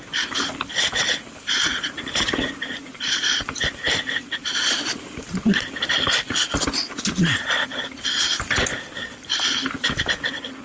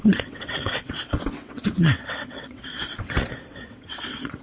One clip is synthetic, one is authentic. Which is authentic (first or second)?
first